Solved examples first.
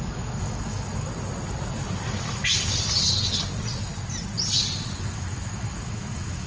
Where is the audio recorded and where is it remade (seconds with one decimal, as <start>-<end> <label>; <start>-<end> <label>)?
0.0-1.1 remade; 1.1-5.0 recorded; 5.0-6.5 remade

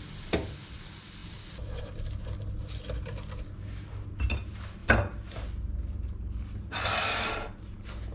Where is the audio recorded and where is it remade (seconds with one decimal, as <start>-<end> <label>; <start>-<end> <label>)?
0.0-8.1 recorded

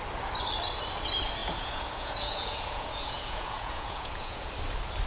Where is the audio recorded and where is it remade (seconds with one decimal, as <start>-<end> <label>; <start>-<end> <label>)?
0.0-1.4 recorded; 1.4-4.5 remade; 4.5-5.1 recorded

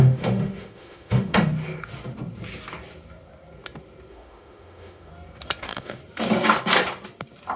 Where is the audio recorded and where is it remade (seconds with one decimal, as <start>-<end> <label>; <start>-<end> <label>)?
0.0-1.5 remade; 1.5-4.1 recorded; 4.1-5.1 remade; 5.1-5.6 recorded; 5.6-6.0 remade; 6.0-7.6 recorded